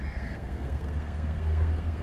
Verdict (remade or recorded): remade